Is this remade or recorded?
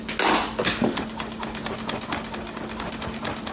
recorded